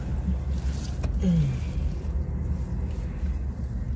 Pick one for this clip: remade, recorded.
recorded